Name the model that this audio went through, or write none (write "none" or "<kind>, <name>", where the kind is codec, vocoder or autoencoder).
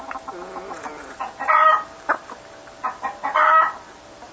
none